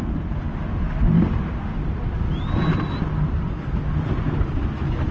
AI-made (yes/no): no